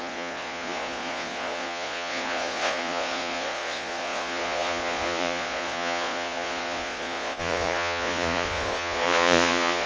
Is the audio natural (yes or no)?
no